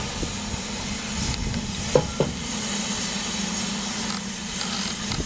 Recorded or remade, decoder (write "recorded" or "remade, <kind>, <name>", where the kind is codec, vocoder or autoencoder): recorded